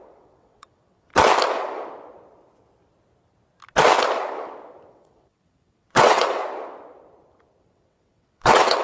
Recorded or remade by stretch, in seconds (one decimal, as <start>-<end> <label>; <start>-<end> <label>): 0.0-1.1 remade; 1.1-4.9 recorded; 4.9-6.4 remade; 6.4-7.6 recorded; 7.6-8.8 remade

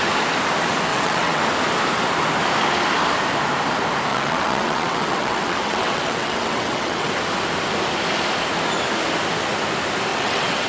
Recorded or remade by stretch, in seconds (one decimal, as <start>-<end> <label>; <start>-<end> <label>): 0.0-0.9 recorded; 0.9-1.4 remade; 1.4-4.1 recorded; 4.1-7.1 remade; 7.1-10.1 recorded; 10.1-10.7 remade

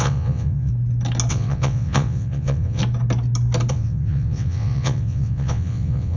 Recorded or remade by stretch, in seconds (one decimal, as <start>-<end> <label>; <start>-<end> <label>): 0.0-0.7 remade; 0.7-1.3 recorded; 1.3-2.8 remade; 2.8-3.7 recorded; 3.7-6.2 remade

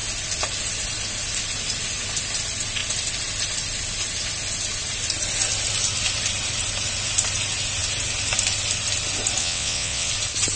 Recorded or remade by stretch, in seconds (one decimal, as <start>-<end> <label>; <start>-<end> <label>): 0.0-9.4 recorded; 9.4-10.1 remade; 10.1-10.6 recorded

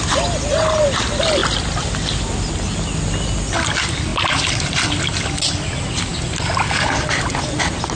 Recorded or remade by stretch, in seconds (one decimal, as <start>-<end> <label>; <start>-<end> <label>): 0.0-8.0 recorded